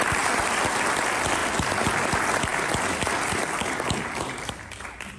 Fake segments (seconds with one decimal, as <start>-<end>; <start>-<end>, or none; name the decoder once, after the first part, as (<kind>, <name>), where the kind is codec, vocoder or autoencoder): none